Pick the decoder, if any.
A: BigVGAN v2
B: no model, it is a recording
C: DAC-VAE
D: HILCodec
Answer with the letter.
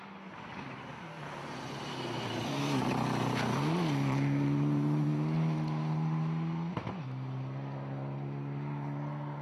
B